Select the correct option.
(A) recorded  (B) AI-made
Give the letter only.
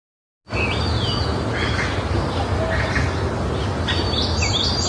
A